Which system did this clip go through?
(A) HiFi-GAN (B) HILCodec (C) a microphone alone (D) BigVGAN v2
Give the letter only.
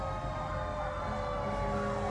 C